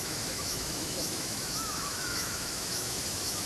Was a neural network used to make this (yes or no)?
yes